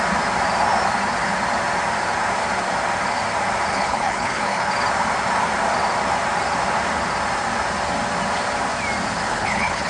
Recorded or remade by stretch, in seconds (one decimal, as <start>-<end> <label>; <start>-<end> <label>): 0.0-3.7 recorded; 3.7-4.7 remade; 4.7-9.3 recorded; 9.3-9.9 remade